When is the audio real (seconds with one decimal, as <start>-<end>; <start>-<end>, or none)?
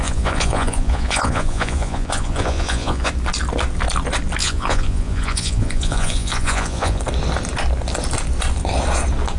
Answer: 3.1-4.4; 7.0-9.4